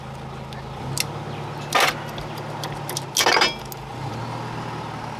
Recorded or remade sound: recorded